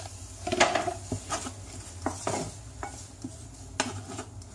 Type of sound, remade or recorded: recorded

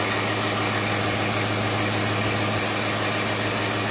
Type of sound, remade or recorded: recorded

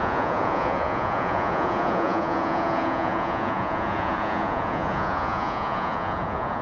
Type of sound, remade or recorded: remade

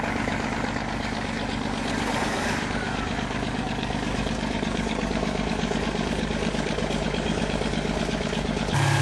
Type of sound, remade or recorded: remade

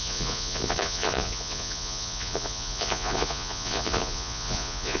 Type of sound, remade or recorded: remade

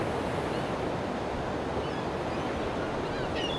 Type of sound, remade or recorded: recorded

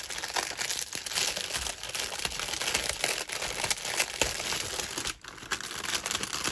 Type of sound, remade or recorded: recorded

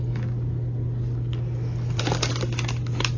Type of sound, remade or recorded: recorded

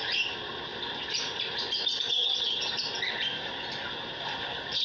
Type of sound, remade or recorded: recorded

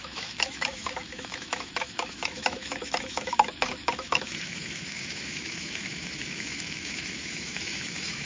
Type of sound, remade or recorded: remade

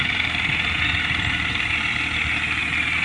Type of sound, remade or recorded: recorded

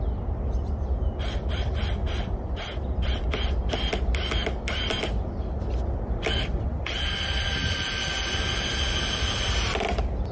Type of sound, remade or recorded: recorded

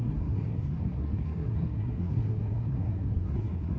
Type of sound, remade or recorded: remade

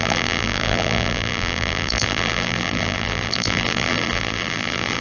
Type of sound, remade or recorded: remade